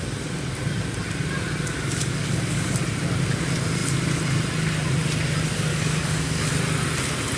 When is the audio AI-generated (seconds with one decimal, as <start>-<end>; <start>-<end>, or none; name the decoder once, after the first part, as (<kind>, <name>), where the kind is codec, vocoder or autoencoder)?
1.7-2.8 (codec, DAC); 5.7-6.5

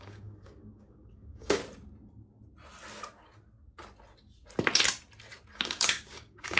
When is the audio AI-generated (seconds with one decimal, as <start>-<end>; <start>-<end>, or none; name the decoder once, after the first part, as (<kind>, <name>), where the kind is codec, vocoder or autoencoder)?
0.0-1.6 (codec, DAC); 5.5-6.6

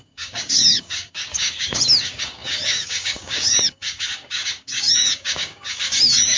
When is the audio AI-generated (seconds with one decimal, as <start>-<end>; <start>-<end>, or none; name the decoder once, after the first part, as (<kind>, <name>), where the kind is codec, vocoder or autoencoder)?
0.0-6.4 (codec, DAC)

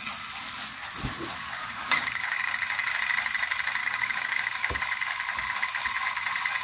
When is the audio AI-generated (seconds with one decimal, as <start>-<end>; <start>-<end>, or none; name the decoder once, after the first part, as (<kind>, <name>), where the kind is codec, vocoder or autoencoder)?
1.6-2.5 (codec, DAC); 3.8-4.8

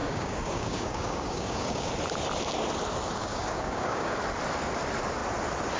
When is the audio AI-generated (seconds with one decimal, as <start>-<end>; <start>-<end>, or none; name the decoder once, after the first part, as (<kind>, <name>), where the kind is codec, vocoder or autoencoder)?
0.0-1.9 (codec, DAC); 3.2-4.2

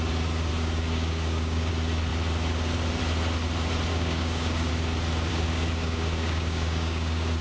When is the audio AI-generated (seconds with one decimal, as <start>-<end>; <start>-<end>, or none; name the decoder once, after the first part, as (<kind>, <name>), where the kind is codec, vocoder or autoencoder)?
0.5-1.7 (codec, DAC); 3.9-4.7; 5.3-7.4

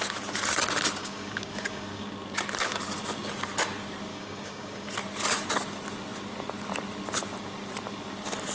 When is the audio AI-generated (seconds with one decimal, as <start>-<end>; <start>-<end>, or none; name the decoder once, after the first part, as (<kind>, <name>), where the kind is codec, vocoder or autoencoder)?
1.0-2.1 (codec, DAC); 4.1-4.9

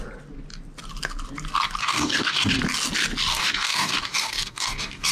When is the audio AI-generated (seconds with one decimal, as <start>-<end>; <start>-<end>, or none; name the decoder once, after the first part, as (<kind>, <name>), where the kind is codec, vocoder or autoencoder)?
1.8-2.6 (codec, DAC); 3.3-5.1